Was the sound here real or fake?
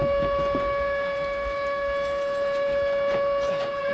fake